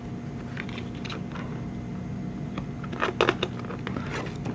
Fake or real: real